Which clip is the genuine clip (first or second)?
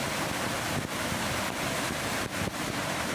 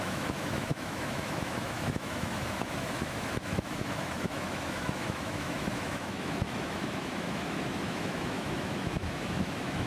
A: first